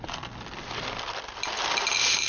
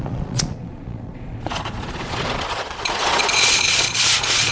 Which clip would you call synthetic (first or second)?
second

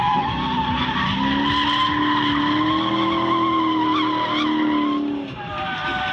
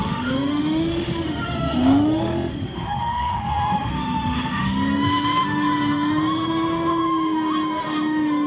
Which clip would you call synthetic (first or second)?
second